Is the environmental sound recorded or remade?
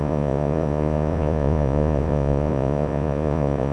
remade